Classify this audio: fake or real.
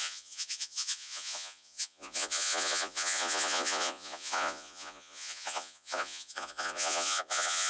fake